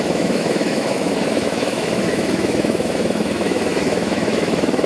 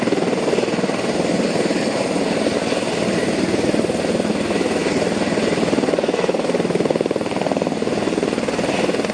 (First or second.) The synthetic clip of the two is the first